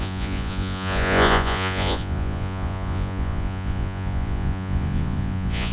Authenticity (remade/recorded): remade